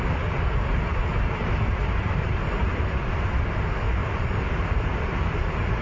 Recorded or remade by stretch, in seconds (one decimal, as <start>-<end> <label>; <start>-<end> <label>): 0.0-1.8 recorded; 1.8-2.7 remade; 2.7-4.0 recorded; 4.0-5.8 remade